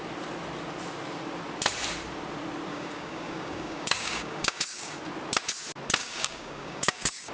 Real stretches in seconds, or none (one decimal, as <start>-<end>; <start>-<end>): 0.0-2.7; 5.0-6.0